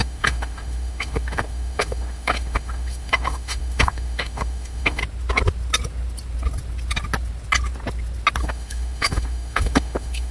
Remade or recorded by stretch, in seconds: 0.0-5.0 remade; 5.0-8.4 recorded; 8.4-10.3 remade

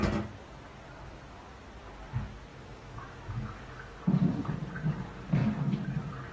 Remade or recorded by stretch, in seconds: 0.0-2.5 recorded; 2.5-4.0 remade; 4.0-6.3 recorded